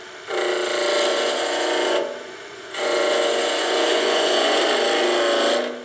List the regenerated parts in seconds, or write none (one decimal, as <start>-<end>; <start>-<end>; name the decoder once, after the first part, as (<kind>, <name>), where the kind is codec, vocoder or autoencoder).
1.1-4.6 (vocoder, Vocos)